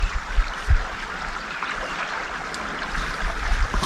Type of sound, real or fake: fake